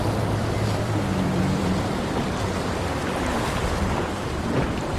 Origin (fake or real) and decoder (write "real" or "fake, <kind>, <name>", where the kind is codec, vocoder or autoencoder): fake, vocoder, BigVGAN v2